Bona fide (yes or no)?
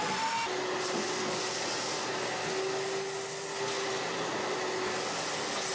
yes